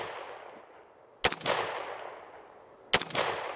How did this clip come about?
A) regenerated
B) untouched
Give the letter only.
B